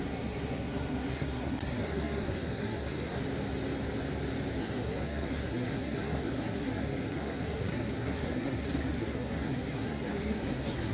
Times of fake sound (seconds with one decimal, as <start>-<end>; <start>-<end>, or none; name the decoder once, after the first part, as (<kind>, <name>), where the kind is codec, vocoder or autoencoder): 0.0-3.2 (codec, SNAC); 4.6-10.9